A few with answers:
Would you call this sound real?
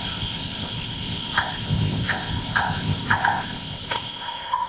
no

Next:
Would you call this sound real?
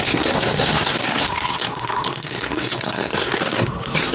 no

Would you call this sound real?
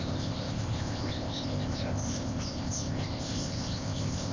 no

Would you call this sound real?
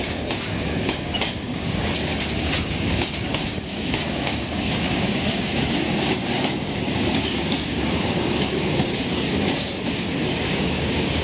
no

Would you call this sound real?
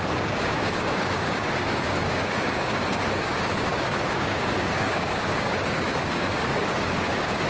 no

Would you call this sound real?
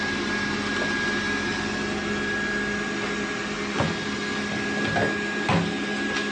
yes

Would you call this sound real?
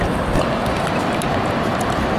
yes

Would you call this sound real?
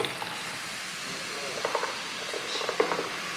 yes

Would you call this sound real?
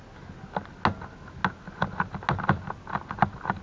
yes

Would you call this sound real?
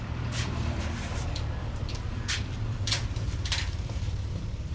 no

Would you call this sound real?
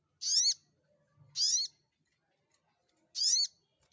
yes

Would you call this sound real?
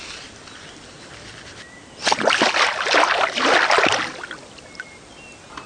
yes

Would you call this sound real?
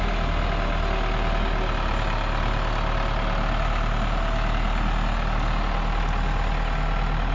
yes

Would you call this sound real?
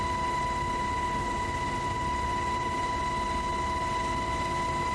yes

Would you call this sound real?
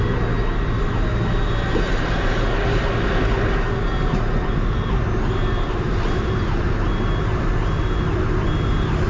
yes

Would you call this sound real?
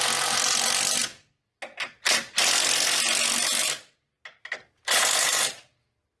yes